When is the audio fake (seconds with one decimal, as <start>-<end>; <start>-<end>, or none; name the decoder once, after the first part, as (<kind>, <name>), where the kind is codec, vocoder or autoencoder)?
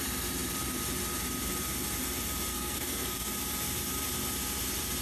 2.5-3.3 (codec, SNAC)